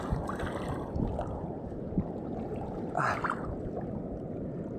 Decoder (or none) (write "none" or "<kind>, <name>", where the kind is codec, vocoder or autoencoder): none